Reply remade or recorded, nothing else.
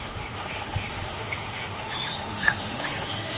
remade